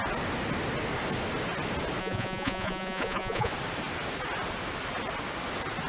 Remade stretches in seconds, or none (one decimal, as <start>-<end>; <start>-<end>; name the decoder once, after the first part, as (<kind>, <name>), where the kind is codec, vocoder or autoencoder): 2.0-3.5 (vocoder, Vocos)